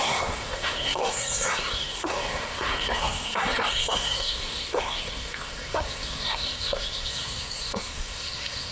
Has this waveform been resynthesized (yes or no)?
yes